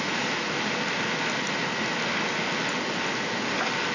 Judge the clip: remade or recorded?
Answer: recorded